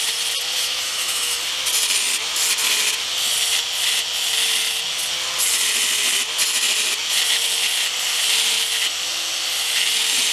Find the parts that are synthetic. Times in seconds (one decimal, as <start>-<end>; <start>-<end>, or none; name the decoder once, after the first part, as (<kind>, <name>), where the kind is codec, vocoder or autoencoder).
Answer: 0.6-1.4 (autoencoder, DAC-VAE)

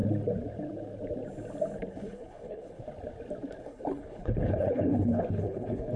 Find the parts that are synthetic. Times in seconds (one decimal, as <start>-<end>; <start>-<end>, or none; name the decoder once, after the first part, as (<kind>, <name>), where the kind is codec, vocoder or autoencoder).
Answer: 1.9-2.8 (codec, HILCodec); 3.5-6.0

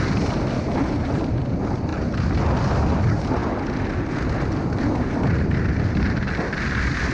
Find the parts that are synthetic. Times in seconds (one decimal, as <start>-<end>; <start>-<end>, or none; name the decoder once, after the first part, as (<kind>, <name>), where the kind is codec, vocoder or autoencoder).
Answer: none

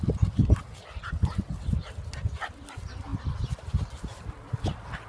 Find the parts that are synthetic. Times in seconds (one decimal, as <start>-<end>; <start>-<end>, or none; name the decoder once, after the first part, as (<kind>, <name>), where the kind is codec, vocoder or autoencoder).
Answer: none